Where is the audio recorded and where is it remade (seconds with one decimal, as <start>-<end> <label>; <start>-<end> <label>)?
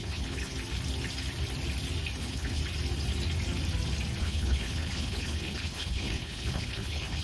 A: 0.0-0.5 remade; 0.5-2.2 recorded; 2.2-2.6 remade; 2.6-4.2 recorded; 4.2-7.2 remade